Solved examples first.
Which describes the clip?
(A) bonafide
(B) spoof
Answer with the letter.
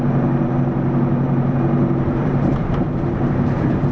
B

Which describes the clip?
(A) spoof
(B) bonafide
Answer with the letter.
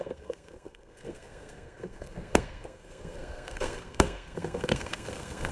A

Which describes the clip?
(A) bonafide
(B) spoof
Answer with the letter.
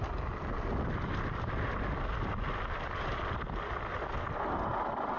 A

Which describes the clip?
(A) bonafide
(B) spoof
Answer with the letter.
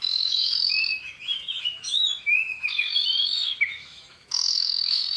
B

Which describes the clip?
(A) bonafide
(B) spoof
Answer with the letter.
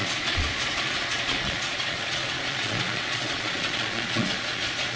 B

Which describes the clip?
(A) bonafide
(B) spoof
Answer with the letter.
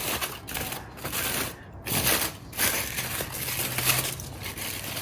A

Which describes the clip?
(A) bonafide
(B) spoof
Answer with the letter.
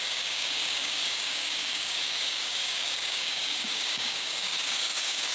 B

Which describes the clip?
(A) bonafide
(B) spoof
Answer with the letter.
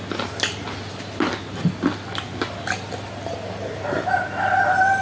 A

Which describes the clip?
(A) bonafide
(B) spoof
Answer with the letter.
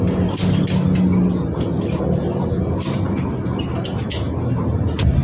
A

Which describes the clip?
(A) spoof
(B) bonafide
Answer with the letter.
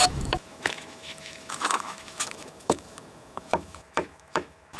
A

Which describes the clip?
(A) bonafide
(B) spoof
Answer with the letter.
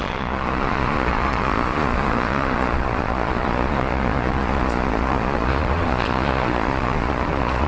B